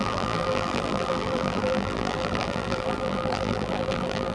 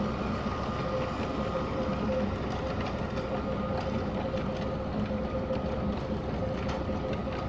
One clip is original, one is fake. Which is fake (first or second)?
first